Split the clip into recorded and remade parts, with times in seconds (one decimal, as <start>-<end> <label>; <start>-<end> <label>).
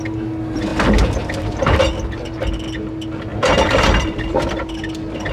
0.0-3.3 recorded; 3.3-4.6 remade; 4.6-5.3 recorded